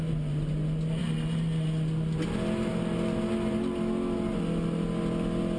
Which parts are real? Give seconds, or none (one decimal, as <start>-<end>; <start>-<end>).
0.0-5.6